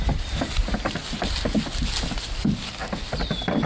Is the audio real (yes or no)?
yes